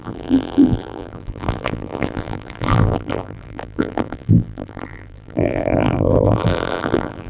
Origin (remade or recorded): remade